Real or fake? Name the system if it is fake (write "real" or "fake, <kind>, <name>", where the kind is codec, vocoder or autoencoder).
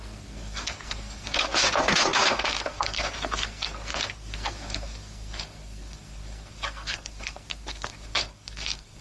fake, codec, SNAC